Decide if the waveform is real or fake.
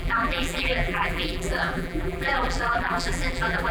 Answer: fake